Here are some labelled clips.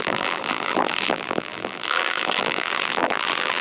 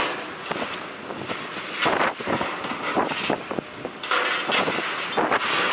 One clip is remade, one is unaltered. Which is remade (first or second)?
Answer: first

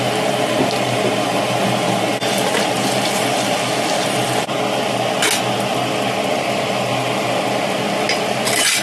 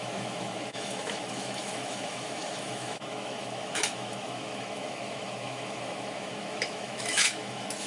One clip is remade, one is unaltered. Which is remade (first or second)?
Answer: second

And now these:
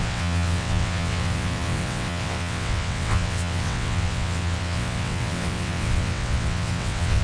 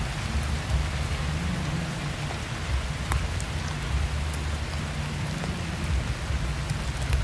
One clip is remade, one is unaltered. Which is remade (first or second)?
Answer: first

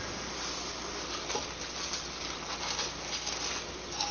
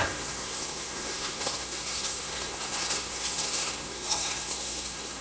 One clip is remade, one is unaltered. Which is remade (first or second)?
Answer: second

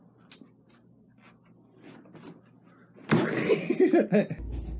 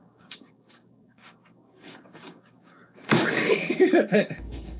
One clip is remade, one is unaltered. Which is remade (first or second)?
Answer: second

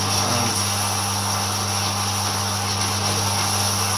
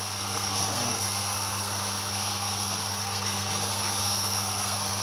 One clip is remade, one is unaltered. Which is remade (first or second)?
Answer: second